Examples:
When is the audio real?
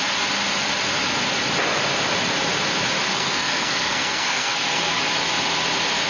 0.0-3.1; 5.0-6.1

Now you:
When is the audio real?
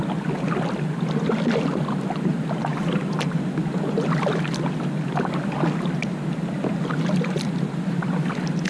0.0-8.7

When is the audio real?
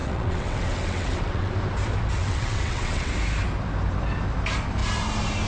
1.5-2.2; 3.1-5.5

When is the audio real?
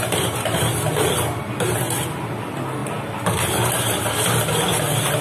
0.0-5.2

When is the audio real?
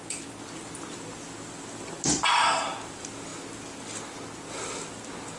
0.0-5.4